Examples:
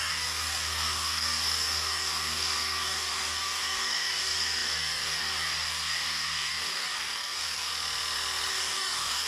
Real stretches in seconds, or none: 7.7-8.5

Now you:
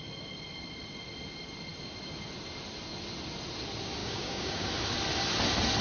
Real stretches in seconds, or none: 0.0-4.0; 4.7-5.8

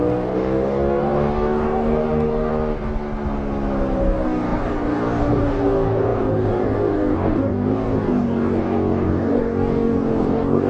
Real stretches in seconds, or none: 2.5-4.0

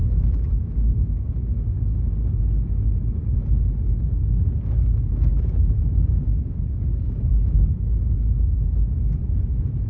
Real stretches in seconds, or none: 2.1-4.2; 9.2-9.9

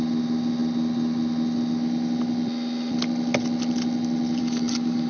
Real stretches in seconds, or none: 0.0-4.4